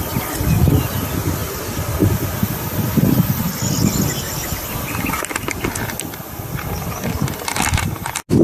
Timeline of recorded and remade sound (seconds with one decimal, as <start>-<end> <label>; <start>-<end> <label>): 0.0-8.4 recorded